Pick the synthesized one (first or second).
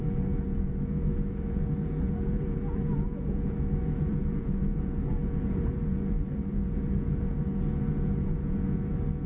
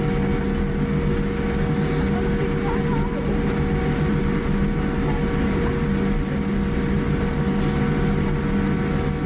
first